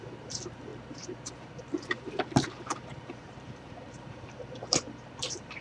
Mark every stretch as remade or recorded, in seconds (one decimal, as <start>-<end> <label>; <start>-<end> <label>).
0.0-5.6 remade